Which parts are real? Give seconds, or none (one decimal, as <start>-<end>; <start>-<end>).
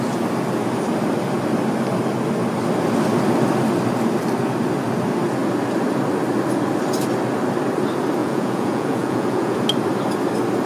0.0-8.2; 9.6-10.7